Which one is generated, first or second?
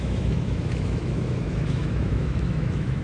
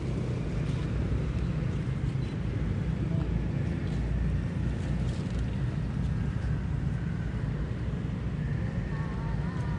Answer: first